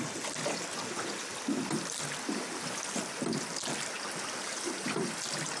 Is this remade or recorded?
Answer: recorded